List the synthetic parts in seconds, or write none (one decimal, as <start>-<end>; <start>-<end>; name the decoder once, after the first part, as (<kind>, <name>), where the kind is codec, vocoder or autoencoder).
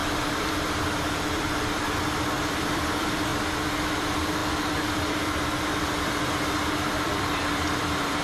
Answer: 0.0-3.3 (vocoder, BigVGAN v2); 4.0-4.4; 5.6-8.2